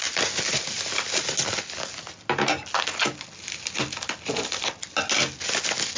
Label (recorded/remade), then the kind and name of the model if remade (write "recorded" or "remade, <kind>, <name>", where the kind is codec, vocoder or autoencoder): recorded